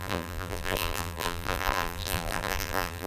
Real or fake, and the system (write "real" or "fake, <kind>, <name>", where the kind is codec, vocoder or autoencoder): fake, vocoder, BigVGAN v2